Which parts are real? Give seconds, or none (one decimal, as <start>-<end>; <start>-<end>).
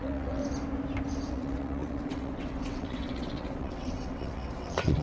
0.4-1.3